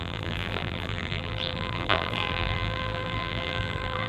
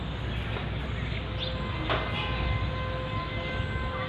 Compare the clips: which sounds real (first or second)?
second